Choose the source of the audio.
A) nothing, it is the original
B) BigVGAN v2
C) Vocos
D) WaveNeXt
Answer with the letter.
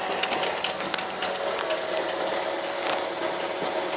A